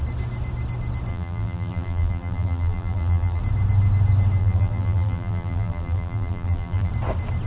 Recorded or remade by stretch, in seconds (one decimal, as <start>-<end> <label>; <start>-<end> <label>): 0.0-1.1 recorded; 1.1-3.4 remade; 3.4-4.4 recorded; 4.4-6.9 remade; 6.9-7.5 recorded